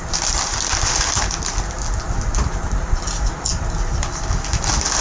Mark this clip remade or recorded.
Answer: recorded